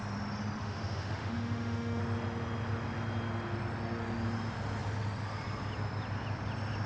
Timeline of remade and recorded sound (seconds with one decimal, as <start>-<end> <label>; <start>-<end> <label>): 0.0-0.6 recorded; 0.6-2.0 remade; 2.0-6.9 recorded